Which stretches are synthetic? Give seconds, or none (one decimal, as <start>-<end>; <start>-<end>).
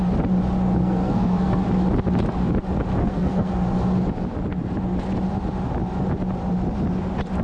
0.8-1.6; 3.0-3.5